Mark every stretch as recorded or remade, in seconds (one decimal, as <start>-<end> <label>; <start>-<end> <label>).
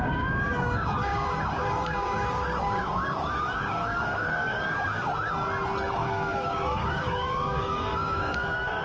0.0-5.1 remade; 5.1-5.9 recorded; 5.9-8.8 remade